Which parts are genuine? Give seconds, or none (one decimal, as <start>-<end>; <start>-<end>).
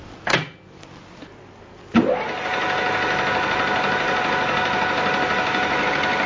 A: 0.0-6.3